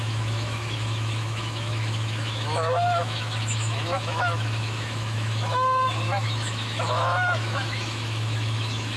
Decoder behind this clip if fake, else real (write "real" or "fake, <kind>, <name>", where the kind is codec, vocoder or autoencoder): fake, autoencoder, DAC-VAE